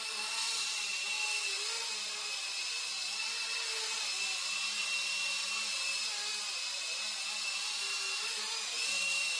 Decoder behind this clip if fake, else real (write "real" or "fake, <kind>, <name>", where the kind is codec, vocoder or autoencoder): real